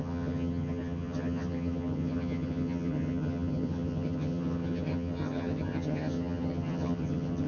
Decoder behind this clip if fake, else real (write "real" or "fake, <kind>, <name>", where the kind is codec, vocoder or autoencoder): fake, vocoder, HiFi-GAN